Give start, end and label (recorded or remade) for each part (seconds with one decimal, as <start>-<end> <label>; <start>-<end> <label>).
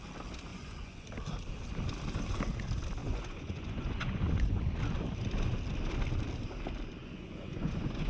0.0-0.5 recorded; 0.5-1.1 remade; 1.1-3.0 recorded; 3.0-4.6 remade; 4.6-7.0 recorded; 7.0-8.1 remade